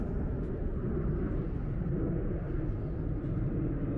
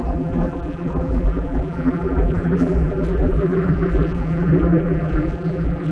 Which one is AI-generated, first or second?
second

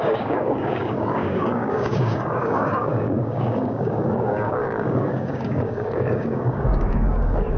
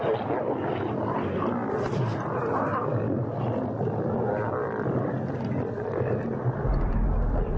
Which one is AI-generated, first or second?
first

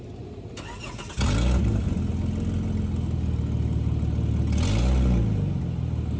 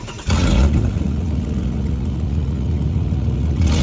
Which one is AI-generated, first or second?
second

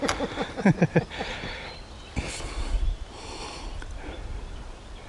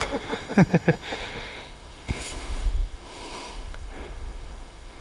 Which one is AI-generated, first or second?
second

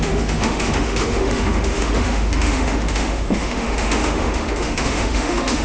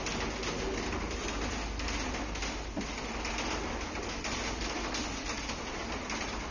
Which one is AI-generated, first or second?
first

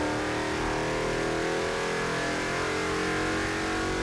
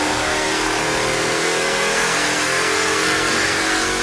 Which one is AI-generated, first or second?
second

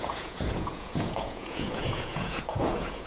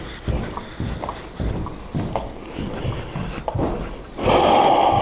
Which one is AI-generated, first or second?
first